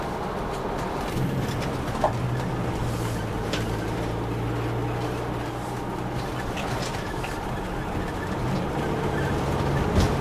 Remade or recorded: recorded